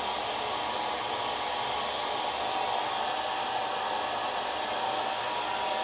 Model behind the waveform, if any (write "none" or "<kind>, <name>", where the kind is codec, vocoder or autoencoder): none